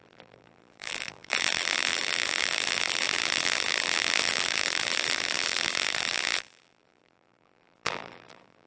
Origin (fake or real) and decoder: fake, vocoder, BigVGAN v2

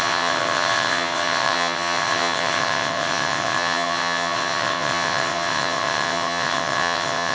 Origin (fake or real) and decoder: fake, vocoder, WaveNeXt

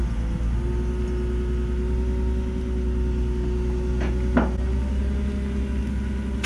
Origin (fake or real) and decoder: real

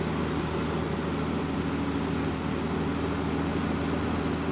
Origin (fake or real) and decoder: real